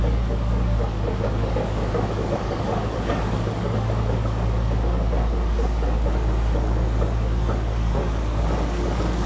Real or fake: fake